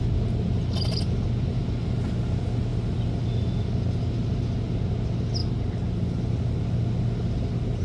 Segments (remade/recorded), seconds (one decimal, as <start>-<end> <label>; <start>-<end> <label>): 0.0-7.8 recorded